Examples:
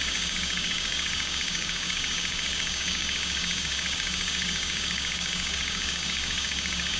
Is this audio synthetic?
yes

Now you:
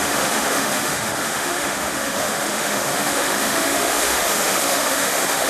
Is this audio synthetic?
yes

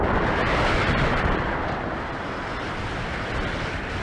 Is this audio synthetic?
no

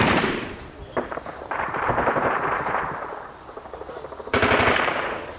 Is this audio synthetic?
yes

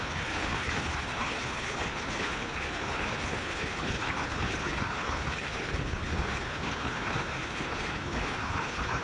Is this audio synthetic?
yes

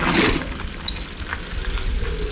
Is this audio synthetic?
no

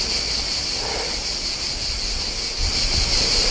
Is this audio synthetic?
no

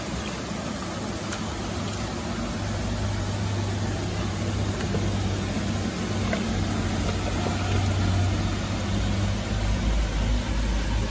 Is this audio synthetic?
no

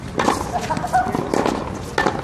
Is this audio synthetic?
no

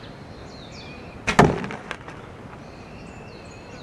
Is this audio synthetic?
no